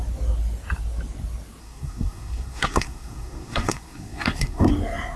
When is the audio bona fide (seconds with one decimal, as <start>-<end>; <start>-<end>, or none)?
0.0-1.6; 4.7-5.2